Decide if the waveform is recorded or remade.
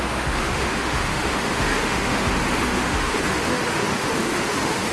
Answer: remade